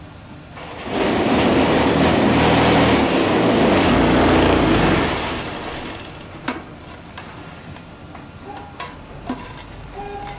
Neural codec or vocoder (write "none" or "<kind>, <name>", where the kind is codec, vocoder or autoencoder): none